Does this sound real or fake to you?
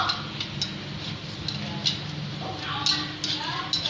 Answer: real